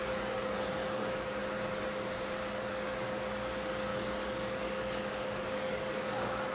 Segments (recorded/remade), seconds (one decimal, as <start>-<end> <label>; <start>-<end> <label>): 0.0-1.4 remade; 1.4-2.5 recorded; 2.5-6.5 remade